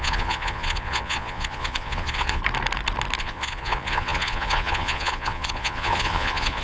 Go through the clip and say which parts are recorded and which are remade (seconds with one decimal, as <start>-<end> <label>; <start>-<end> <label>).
0.0-2.4 remade; 2.4-3.2 recorded; 3.2-6.6 remade